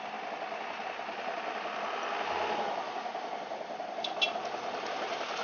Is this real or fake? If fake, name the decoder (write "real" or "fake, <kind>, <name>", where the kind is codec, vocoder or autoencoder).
real